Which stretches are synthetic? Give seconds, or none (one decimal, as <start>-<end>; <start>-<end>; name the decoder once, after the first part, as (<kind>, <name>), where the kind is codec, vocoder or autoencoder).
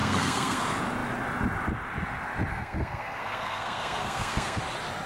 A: 0.0-0.6 (codec, SNAC); 2.5-4.6